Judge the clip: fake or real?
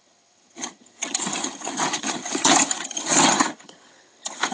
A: fake